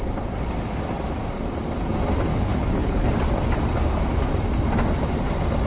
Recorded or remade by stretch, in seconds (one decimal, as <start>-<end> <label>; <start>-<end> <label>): 0.0-2.3 recorded; 2.3-3.1 remade; 3.1-5.7 recorded